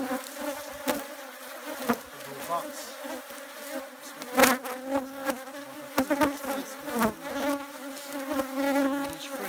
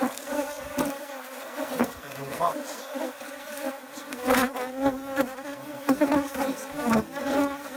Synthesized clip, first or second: second